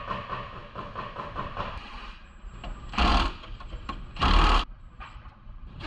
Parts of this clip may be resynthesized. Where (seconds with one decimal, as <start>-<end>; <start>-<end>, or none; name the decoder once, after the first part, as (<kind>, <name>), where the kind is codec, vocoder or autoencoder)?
0.6-1.9 (vocoder, BigVGAN v2); 3.1-5.9